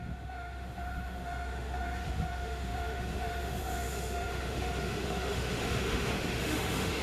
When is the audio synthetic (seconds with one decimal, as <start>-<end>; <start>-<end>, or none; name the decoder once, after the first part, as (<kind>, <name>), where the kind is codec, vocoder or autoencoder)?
0.0-7.0 (autoencoder, DAC-VAE)